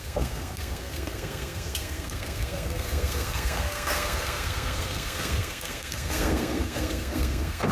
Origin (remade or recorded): remade